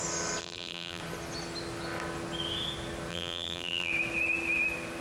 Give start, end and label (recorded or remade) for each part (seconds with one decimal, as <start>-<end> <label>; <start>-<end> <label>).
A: 0.0-0.4 recorded; 0.4-1.0 remade; 1.0-3.1 recorded; 3.1-3.9 remade; 3.9-5.0 recorded